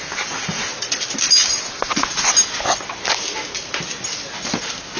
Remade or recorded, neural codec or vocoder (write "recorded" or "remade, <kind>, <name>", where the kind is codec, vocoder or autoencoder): recorded